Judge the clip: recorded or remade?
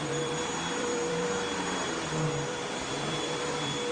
remade